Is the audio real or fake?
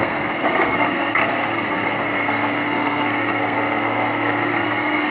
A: fake